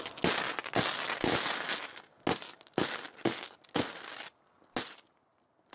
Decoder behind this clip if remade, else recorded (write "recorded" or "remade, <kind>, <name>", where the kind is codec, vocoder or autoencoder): recorded